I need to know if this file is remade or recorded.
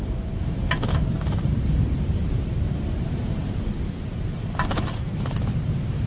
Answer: remade